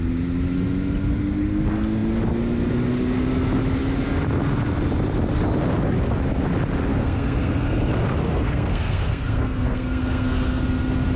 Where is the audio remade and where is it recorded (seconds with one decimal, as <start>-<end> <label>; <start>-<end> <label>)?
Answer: 0.0-6.9 recorded; 6.9-7.8 remade; 7.8-8.2 recorded; 8.2-10.6 remade; 10.6-11.2 recorded